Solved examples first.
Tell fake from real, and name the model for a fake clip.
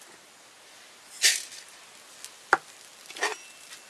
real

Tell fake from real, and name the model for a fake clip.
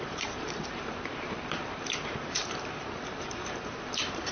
fake, vocoder, BigVGAN v2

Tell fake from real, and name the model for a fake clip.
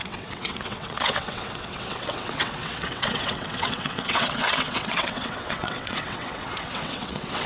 fake, vocoder, WaveNeXt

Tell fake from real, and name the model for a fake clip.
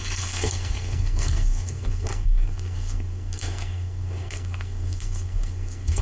fake, codec, SNAC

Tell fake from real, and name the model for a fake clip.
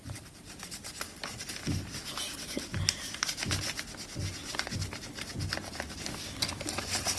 real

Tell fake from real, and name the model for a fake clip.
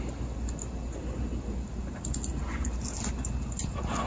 real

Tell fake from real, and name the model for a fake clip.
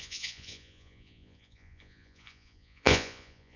fake, vocoder, Vocos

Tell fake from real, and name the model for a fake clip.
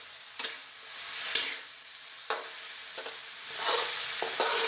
real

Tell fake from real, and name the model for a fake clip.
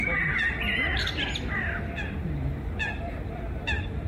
real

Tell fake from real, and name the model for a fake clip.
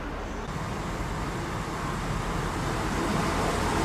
real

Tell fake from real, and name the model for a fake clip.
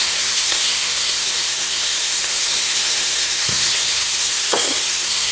fake, codec, SNAC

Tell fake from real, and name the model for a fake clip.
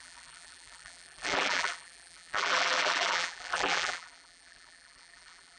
fake, vocoder, BigVGAN v2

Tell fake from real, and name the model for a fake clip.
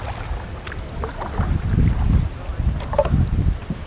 real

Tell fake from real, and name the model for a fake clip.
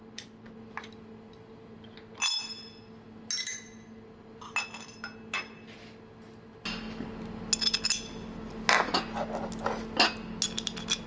real